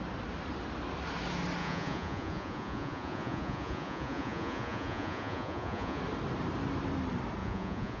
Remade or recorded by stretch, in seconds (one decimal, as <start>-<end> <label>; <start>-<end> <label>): 0.0-1.6 recorded; 1.6-6.0 remade; 6.0-7.4 recorded; 7.4-8.0 remade